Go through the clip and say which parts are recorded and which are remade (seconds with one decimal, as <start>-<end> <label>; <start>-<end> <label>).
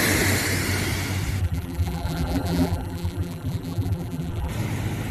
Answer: 0.0-1.4 recorded; 1.4-4.5 remade; 4.5-5.1 recorded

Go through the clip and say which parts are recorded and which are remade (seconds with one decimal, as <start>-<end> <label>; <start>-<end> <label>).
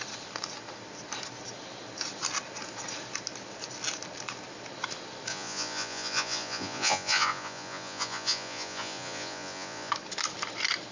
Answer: 0.0-5.3 recorded; 5.3-9.9 remade; 9.9-10.9 recorded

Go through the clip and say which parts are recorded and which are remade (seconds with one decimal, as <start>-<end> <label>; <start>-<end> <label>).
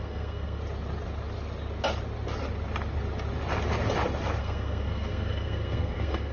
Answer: 0.0-0.6 remade; 0.6-4.4 recorded; 4.4-6.3 remade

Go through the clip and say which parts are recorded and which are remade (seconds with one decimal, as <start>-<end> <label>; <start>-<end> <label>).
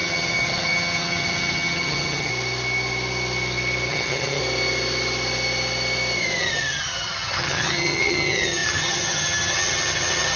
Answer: 0.0-2.3 remade; 2.3-3.9 recorded; 3.9-4.4 remade; 4.4-6.4 recorded; 6.4-10.4 remade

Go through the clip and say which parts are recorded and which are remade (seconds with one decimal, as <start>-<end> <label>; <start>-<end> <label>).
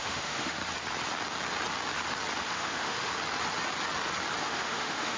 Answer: 0.0-0.6 remade; 0.6-2.4 recorded; 2.4-3.1 remade; 3.1-4.4 recorded; 4.4-5.2 remade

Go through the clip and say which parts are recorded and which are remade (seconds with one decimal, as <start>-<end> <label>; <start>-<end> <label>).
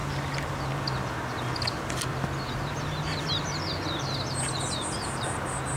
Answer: 0.0-5.8 recorded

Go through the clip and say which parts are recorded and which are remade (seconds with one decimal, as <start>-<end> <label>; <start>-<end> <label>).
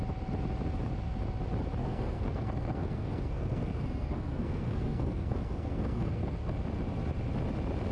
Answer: 0.0-1.8 recorded; 1.8-6.5 remade; 6.5-7.9 recorded